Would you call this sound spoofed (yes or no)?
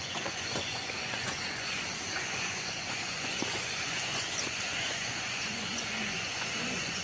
yes